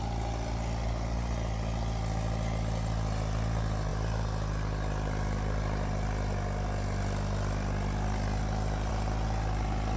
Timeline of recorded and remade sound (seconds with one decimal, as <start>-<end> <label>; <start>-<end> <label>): 0.0-10.0 recorded